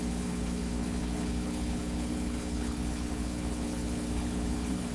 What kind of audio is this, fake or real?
fake